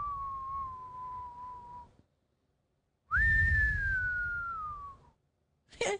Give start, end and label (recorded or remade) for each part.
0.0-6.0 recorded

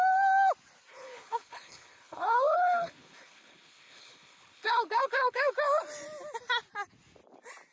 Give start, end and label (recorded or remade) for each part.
0.0-0.9 recorded; 0.9-5.5 remade; 5.5-7.7 recorded